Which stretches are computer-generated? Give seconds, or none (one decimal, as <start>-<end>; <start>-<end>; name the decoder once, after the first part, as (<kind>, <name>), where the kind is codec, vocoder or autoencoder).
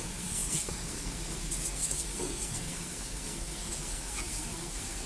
0.0-5.1 (codec, SNAC)